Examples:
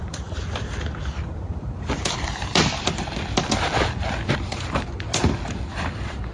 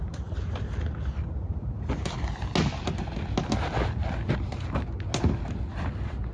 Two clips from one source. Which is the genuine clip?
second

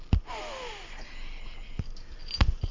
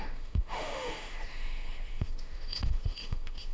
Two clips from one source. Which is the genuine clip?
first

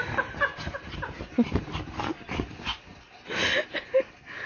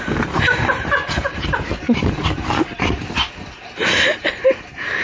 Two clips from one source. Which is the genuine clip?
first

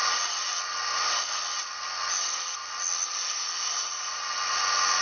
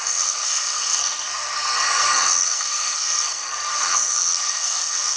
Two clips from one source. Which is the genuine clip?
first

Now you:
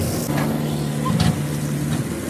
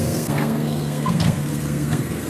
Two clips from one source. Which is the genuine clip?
first